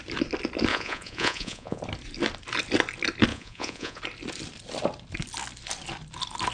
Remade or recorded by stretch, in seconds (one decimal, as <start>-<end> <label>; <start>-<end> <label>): 0.0-0.7 recorded; 0.7-1.8 remade; 1.8-3.3 recorded; 3.3-4.0 remade; 4.0-6.5 recorded